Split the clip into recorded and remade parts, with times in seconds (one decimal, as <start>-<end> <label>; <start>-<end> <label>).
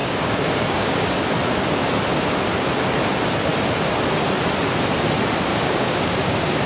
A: 0.0-1.2 remade; 1.2-5.5 recorded; 5.5-6.7 remade